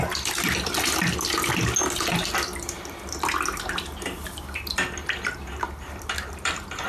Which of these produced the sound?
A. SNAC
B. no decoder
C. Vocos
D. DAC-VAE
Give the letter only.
B